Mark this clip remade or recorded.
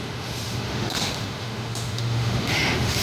remade